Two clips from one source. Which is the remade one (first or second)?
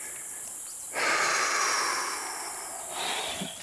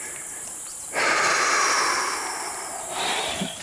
second